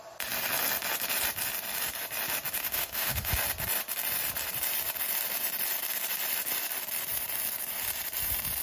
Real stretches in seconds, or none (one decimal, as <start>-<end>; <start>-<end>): 0.0-2.6; 3.3-8.6